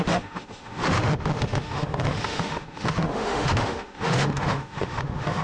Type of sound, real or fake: fake